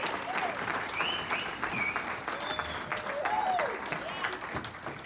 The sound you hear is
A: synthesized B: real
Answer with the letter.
B